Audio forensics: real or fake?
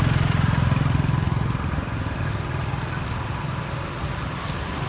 real